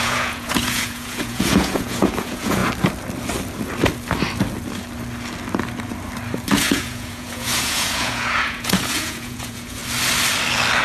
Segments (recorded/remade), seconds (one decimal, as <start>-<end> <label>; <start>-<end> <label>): 0.0-2.6 remade; 2.6-6.5 recorded; 6.5-9.8 remade; 9.8-10.8 recorded